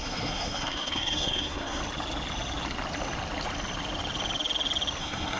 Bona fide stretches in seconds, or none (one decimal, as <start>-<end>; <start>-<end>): 1.8-5.0